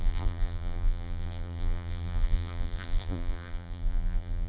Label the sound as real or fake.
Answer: fake